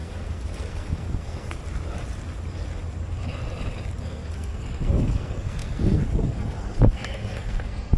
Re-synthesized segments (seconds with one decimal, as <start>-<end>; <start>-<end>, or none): 0.0-1.6; 4.0-8.0